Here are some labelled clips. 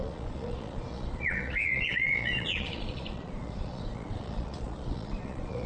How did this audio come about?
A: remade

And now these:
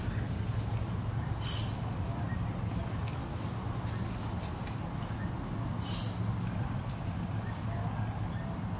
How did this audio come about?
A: recorded